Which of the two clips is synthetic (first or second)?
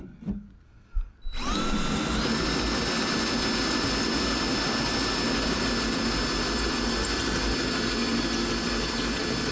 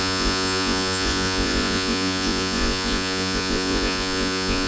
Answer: second